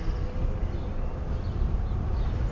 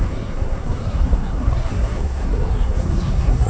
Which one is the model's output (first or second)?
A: second